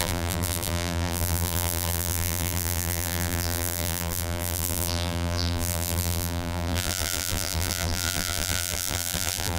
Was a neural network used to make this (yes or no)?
yes